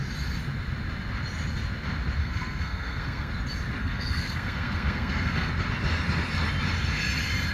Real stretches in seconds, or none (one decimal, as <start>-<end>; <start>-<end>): 0.0-2.2; 3.3-3.8; 5.5-7.5